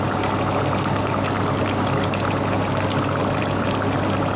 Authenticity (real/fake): real